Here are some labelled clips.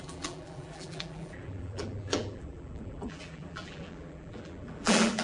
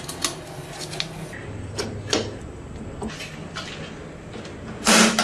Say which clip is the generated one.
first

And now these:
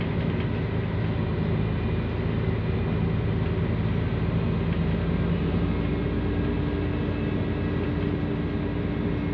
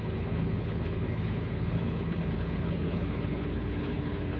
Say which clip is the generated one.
second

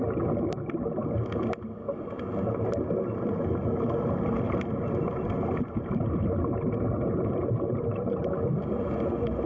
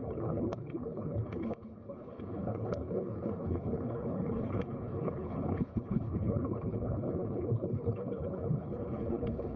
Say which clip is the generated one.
second